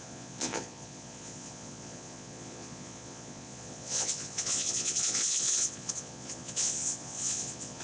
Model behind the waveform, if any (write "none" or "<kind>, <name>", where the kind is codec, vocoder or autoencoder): vocoder, Vocos